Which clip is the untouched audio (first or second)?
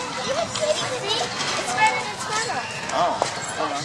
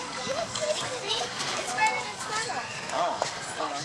first